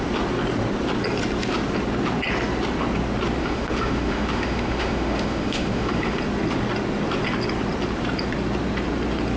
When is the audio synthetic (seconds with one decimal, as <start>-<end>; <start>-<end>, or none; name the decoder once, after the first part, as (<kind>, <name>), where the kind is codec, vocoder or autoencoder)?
3.4-6.2 (autoencoder, DAC-VAE)